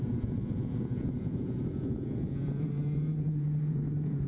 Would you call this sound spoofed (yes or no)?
yes